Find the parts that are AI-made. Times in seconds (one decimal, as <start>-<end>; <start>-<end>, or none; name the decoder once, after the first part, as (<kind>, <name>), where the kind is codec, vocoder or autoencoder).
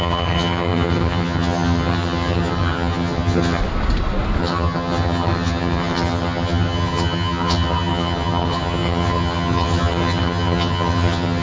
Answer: 0.0-3.6 (vocoder, HiFi-GAN); 4.4-11.4